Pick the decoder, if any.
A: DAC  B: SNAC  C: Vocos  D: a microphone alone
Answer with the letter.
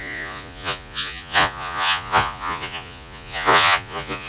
C